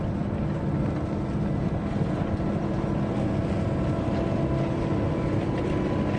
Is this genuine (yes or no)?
yes